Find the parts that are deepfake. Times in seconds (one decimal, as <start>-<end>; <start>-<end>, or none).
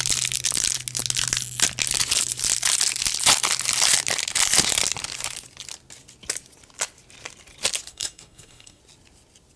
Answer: 7.9-8.8